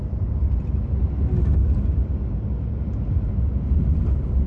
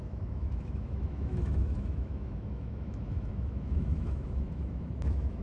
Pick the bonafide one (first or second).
first